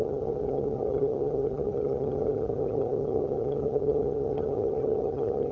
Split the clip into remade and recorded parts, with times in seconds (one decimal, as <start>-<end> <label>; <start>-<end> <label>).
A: 0.0-5.5 remade